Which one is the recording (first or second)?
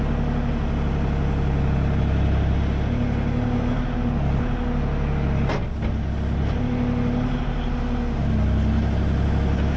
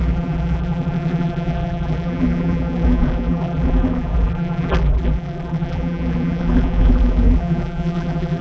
first